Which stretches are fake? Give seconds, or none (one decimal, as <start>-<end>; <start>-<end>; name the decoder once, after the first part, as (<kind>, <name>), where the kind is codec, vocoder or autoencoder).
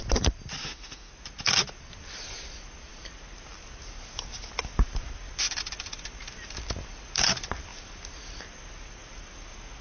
0.6-1.1 (autoencoder, DAC-VAE)